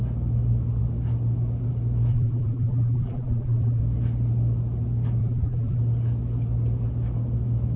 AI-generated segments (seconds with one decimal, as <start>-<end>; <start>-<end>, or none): 2.1-3.8; 5.2-5.8